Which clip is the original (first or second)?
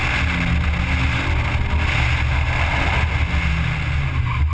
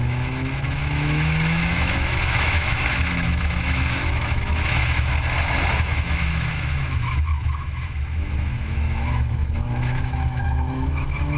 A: first